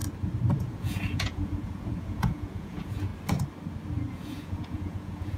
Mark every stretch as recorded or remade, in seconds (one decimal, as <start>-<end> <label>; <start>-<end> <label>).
0.0-0.6 recorded; 0.6-3.1 remade; 3.1-4.1 recorded; 4.1-5.4 remade